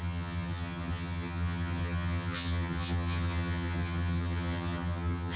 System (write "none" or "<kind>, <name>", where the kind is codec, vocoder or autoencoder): vocoder, HiFi-GAN